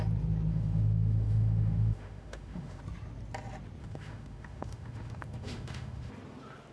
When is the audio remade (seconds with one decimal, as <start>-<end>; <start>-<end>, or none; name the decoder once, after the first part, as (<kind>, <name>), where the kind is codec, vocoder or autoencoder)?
0.5-2.8 (autoencoder, DAC-VAE); 3.8-6.1

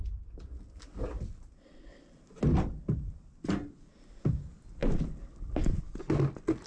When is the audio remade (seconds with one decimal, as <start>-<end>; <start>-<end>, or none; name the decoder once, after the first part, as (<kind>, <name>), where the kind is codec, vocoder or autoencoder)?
none

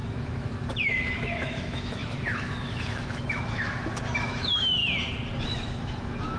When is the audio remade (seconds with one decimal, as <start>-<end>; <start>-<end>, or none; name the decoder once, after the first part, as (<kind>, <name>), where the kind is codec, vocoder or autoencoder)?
0.0-4.8 (autoencoder, DAC-VAE); 5.4-6.4